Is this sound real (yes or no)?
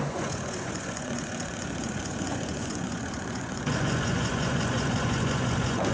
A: no